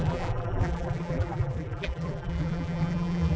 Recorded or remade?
remade